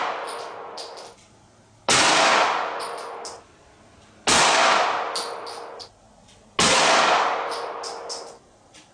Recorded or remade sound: recorded